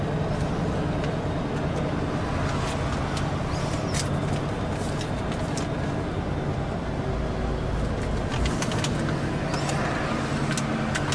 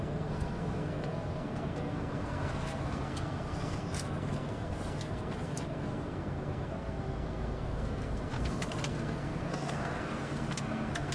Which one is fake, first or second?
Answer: second